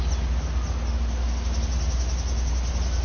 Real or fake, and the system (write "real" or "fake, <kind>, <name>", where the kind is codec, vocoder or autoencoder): real